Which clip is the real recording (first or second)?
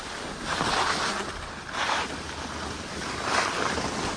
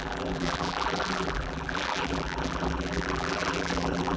first